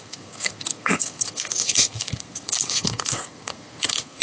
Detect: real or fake fake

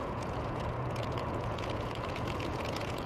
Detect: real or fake fake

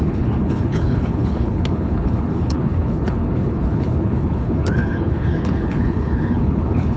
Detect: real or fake fake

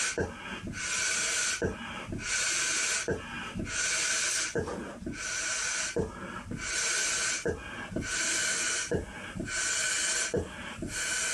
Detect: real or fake real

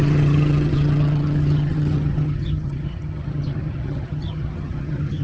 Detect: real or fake fake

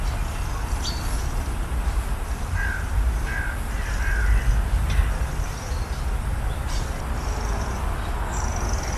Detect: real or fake real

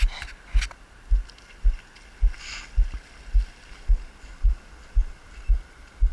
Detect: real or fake real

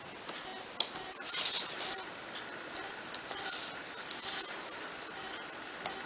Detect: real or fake real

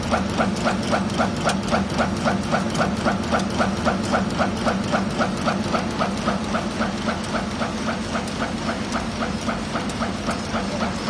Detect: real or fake real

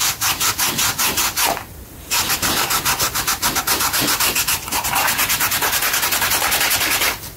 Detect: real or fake real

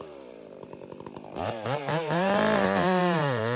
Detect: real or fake fake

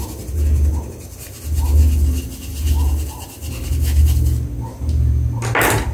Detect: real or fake real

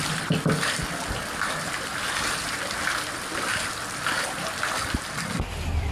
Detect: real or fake real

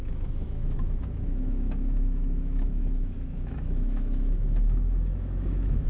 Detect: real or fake fake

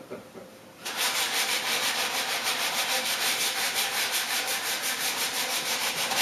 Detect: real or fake fake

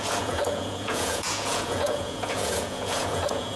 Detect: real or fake fake